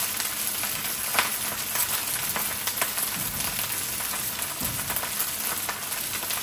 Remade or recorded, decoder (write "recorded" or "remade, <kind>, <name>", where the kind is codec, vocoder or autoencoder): recorded